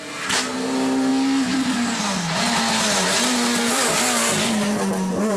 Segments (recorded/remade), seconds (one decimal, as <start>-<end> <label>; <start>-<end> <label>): 0.0-5.4 recorded